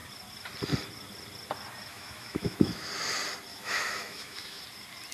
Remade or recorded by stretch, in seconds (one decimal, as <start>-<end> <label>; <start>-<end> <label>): 0.0-1.9 recorded; 1.9-2.9 remade; 2.9-3.5 recorded; 3.5-4.6 remade; 4.6-5.1 recorded